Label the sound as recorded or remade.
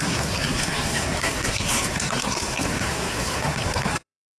remade